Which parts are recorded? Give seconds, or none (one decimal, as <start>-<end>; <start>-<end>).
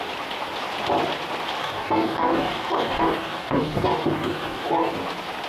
0.0-1.6; 4.9-5.5